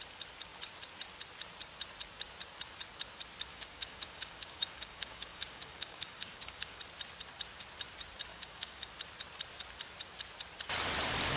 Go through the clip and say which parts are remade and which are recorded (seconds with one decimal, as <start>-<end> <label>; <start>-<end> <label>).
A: 0.0-3.5 recorded; 3.5-6.8 remade; 6.8-8.3 recorded; 8.3-8.9 remade; 8.9-11.4 recorded